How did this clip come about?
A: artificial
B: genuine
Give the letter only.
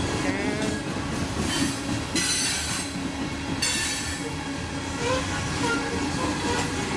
B